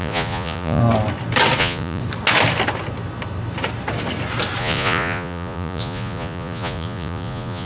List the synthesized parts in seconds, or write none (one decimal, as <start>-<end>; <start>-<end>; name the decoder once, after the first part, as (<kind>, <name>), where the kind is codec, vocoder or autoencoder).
0.0-0.8 (vocoder, Vocos); 1.6-2.0; 4.6-7.7